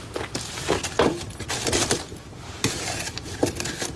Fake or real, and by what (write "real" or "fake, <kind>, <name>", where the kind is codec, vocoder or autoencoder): real